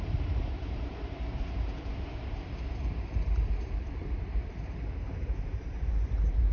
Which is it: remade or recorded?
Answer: remade